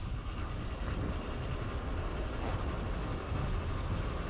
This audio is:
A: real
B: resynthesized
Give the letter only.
A